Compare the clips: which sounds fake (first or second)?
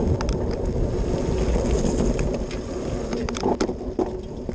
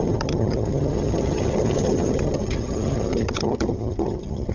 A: second